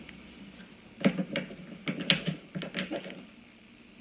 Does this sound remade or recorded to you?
recorded